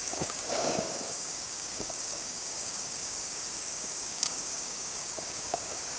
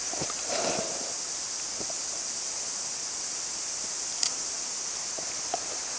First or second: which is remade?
first